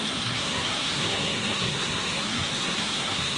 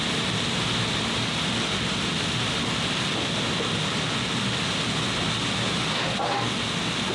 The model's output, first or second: first